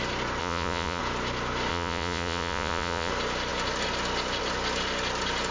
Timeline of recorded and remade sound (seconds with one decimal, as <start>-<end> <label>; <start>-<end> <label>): 0.0-0.4 recorded; 0.4-1.0 remade; 1.0-1.7 recorded; 1.7-3.1 remade; 3.1-5.5 recorded